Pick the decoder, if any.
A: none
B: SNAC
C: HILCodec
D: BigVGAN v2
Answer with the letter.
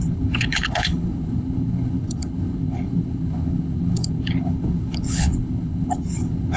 C